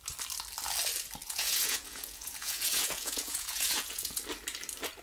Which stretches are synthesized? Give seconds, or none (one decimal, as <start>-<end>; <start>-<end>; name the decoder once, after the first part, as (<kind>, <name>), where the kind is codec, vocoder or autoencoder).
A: 1.2-4.2 (vocoder, Vocos)